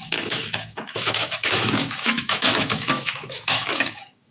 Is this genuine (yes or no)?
no